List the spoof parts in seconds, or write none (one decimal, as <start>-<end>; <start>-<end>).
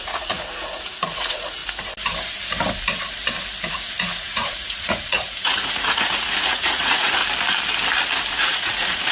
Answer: 0.0-1.6; 3.7-7.2; 8.3-9.1